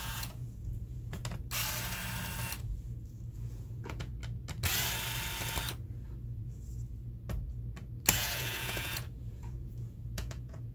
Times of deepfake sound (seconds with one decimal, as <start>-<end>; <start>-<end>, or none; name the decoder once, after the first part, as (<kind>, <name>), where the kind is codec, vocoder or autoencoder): 0.0-1.2 (vocoder, Vocos); 3.3-4.1; 8.1-10.7